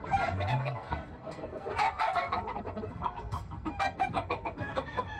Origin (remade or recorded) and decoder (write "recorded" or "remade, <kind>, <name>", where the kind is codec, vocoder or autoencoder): remade, codec, SNAC